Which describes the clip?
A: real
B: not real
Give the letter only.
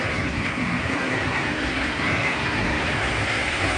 B